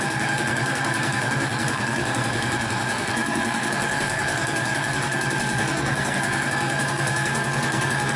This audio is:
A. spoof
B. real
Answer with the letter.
A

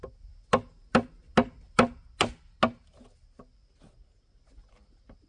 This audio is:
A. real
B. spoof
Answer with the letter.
A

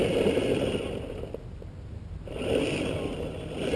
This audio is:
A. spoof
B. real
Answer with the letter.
B